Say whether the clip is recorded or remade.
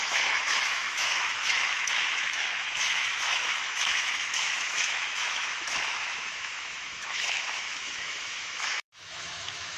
remade